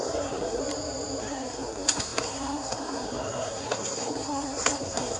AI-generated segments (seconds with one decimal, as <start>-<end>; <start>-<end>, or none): 0.0-0.6; 1.2-5.2